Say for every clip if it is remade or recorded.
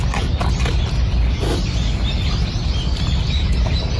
recorded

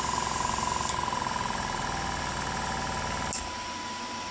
recorded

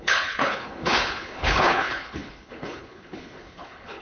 remade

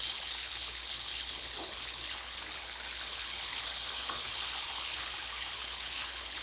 remade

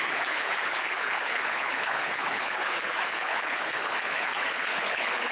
remade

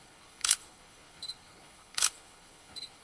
remade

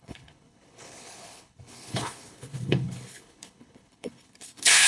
remade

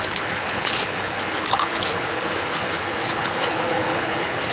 remade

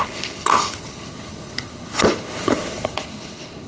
remade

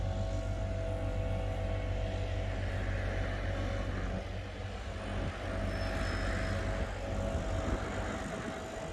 recorded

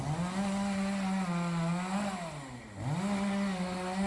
recorded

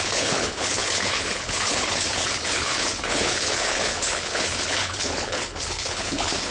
remade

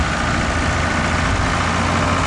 recorded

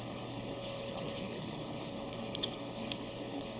remade